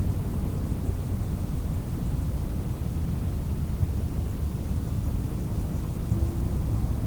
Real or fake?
real